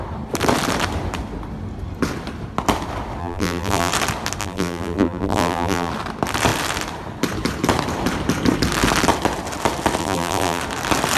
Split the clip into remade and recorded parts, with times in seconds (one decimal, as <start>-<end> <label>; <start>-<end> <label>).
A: 0.0-3.2 recorded; 3.2-3.9 remade; 3.9-4.4 recorded; 4.4-5.9 remade; 5.9-10.0 recorded; 10.0-10.6 remade; 10.6-11.2 recorded